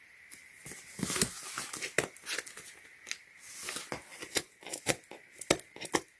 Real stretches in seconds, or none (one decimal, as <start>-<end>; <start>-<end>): 0.0-4.1; 4.9-6.2